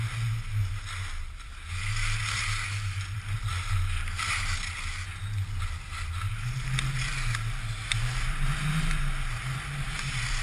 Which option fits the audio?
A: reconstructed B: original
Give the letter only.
B